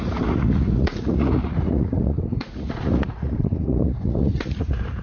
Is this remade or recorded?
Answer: remade